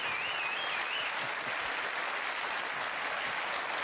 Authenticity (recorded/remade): recorded